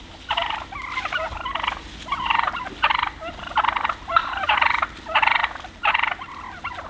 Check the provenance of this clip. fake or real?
real